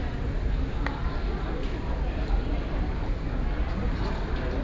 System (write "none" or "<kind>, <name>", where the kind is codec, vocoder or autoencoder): none